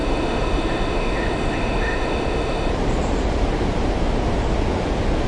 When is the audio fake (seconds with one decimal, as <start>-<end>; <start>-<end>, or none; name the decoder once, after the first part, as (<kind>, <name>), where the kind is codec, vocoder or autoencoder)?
0.0-2.7 (autoencoder, DAC-VAE)